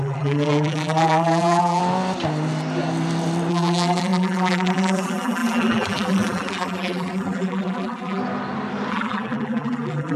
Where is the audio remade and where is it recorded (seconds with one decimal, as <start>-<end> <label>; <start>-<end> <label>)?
0.0-1.8 remade; 1.8-3.5 recorded; 3.5-8.2 remade; 8.2-8.9 recorded; 8.9-10.2 remade